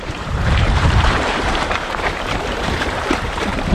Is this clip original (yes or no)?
no